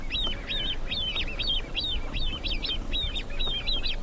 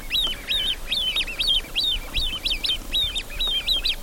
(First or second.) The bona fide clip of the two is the first